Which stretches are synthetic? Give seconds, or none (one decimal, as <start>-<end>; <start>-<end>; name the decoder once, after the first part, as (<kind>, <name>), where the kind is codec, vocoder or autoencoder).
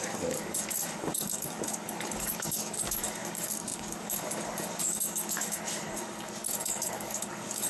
0.0-7.7 (codec, DAC)